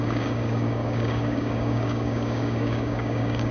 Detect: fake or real fake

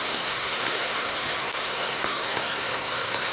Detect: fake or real fake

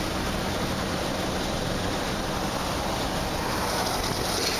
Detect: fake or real real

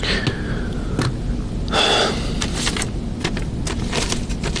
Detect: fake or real real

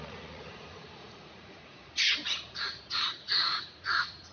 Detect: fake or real fake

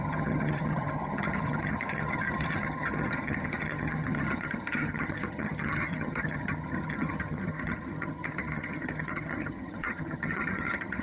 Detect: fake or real fake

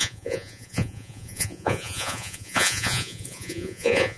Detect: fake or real fake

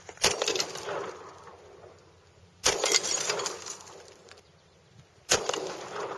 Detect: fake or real fake